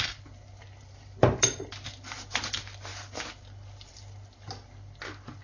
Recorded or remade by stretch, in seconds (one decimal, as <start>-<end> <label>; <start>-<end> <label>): 0.0-5.4 recorded